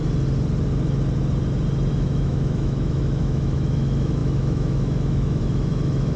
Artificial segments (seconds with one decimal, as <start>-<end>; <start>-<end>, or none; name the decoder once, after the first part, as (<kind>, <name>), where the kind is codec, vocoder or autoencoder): 1.9-6.2 (autoencoder, DAC-VAE)